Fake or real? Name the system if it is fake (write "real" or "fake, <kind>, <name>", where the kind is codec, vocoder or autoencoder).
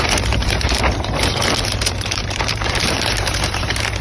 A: fake, vocoder, BigVGAN v2